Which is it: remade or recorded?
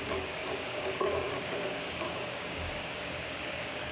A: remade